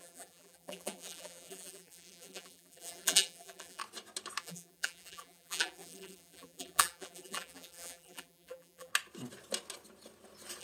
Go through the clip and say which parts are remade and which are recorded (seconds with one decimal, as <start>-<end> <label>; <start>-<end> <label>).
0.0-3.8 remade; 3.8-4.4 recorded; 4.4-8.9 remade; 8.9-10.6 recorded